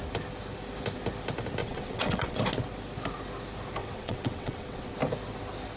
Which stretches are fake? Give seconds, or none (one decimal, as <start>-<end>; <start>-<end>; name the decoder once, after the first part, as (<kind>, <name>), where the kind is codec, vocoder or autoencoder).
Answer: 1.6-2.4 (vocoder, WaveNeXt); 3.8-4.9